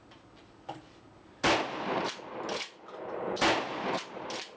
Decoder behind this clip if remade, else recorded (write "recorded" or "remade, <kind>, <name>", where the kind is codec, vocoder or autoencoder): recorded